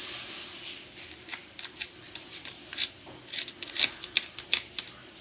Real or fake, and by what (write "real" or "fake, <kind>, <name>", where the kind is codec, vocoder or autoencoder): real